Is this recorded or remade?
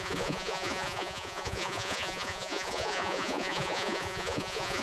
remade